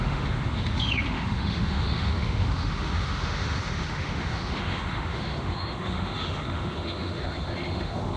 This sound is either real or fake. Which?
fake